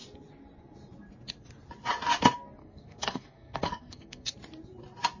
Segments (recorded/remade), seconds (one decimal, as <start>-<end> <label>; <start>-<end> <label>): 0.0-2.6 recorded; 2.6-4.3 remade; 4.3-5.2 recorded